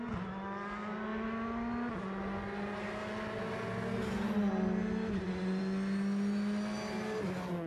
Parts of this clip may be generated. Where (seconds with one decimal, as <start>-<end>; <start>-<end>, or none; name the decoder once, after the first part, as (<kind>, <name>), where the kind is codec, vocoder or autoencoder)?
none